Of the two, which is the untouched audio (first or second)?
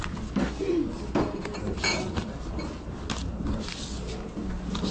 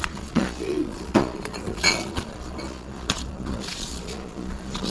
first